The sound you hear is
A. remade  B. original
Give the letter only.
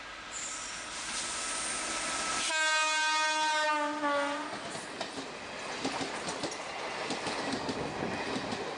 B